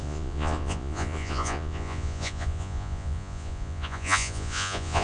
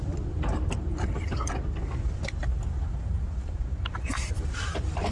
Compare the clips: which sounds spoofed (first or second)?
first